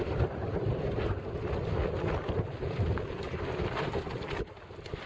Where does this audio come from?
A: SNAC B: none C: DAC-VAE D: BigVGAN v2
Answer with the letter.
D